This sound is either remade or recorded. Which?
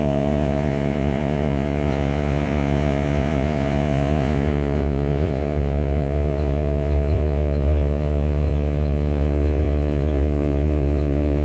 remade